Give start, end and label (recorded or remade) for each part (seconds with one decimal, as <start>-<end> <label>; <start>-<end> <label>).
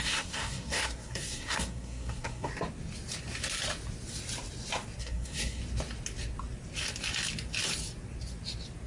0.0-2.5 remade; 2.5-5.0 recorded; 5.0-5.6 remade; 5.6-8.9 recorded